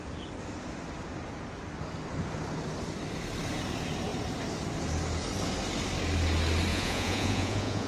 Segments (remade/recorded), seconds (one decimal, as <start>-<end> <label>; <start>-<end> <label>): 0.0-6.7 recorded; 6.7-7.9 remade